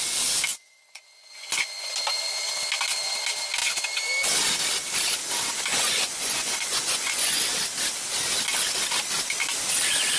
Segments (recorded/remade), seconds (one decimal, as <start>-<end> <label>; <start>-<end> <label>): 0.0-0.5 recorded; 0.5-1.9 remade; 1.9-5.7 recorded; 5.7-7.4 remade; 7.4-10.2 recorded